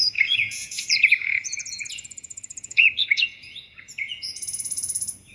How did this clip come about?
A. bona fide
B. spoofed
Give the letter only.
B